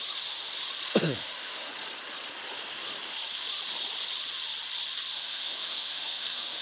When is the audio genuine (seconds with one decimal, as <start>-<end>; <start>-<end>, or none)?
0.0-0.9; 1.7-5.1